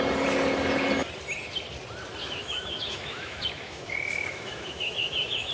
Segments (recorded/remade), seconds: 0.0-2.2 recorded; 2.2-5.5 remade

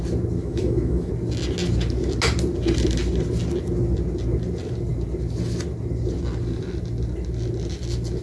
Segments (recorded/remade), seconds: 0.0-0.4 recorded; 0.4-1.1 remade; 1.1-8.2 recorded